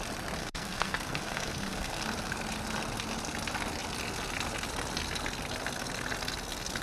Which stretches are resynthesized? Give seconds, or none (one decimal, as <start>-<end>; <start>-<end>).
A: 0.4-2.0